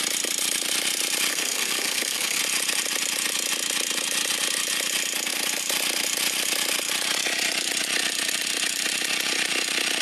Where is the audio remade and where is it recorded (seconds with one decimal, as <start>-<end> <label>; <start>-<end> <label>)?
0.0-1.3 recorded; 1.3-2.4 remade; 2.4-10.0 recorded

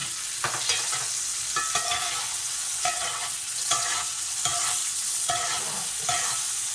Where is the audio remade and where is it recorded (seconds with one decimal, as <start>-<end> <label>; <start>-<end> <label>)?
0.0-2.3 recorded; 2.3-4.3 remade; 4.3-4.8 recorded; 4.8-5.6 remade; 5.6-6.7 recorded

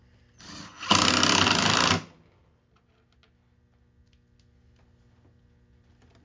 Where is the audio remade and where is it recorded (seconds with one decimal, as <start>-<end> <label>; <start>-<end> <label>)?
0.0-6.2 recorded

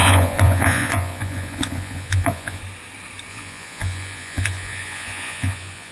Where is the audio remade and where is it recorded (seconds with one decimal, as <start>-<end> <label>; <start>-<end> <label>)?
0.0-2.6 remade; 2.6-3.3 recorded; 3.3-5.9 remade